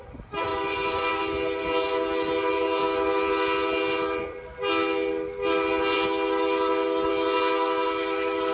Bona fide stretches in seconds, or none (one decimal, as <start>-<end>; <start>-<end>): 0.0-0.5; 1.1-8.5